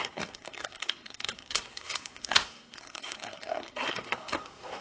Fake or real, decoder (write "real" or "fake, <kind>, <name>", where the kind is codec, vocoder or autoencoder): fake, codec, SNAC